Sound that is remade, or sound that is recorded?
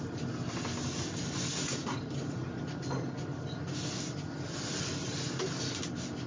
recorded